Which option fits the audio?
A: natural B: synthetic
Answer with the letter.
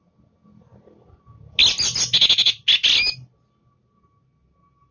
A